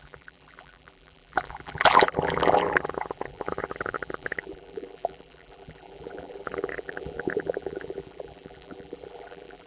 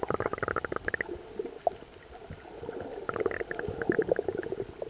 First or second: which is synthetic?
first